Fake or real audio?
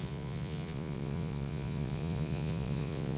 fake